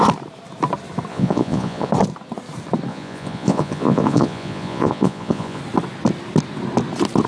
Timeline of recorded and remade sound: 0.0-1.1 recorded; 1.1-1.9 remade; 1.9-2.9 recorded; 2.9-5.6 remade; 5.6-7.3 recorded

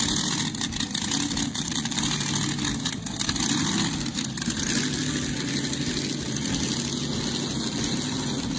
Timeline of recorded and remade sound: 0.0-1.5 recorded; 1.5-2.0 remade; 2.0-8.6 recorded